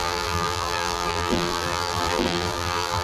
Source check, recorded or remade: remade